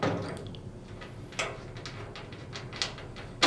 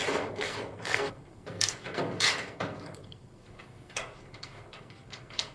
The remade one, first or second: second